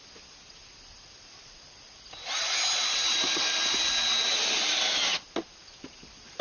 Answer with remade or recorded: recorded